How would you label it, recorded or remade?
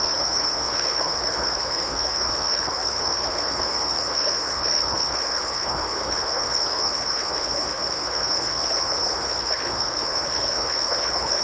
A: remade